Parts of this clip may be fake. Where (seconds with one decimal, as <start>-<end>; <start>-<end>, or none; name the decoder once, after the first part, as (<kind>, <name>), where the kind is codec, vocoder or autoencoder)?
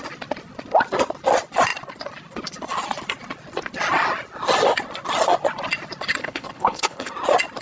6.2-7.1 (codec, HILCodec)